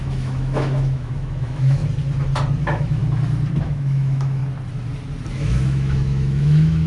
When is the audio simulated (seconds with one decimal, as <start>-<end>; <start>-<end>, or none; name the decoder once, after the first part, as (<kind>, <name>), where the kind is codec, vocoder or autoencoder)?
0.0-1.8 (autoencoder, DAC-VAE); 2.6-3.0; 3.6-4.4; 5.3-6.9